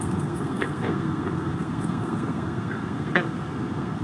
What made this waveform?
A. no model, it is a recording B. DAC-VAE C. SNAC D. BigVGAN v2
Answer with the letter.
C